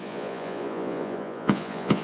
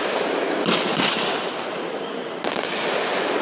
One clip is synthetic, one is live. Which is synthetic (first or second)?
first